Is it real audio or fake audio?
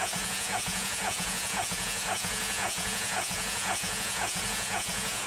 fake